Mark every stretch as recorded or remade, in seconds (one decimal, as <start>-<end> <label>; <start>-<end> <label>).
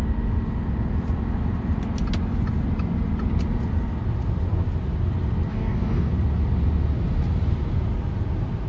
0.0-5.5 recorded; 5.5-6.1 remade; 6.1-8.7 recorded